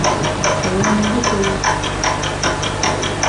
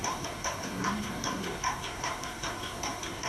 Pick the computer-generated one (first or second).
second